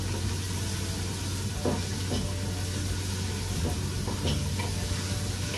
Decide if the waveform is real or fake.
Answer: real